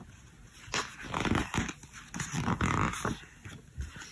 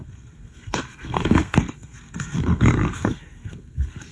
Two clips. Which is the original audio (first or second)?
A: first